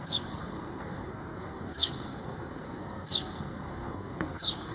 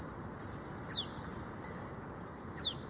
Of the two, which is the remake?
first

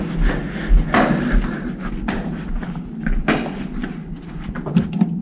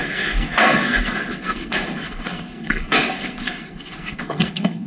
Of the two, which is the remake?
second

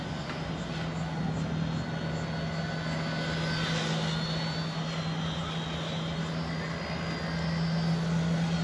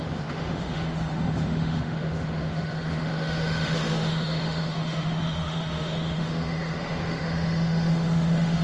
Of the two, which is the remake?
second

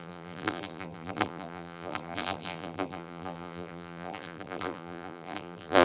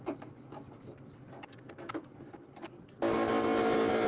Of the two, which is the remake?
first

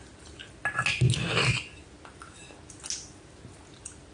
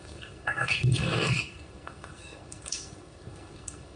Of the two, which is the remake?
second